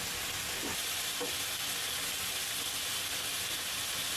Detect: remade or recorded recorded